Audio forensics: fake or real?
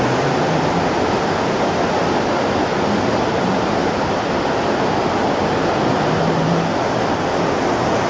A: real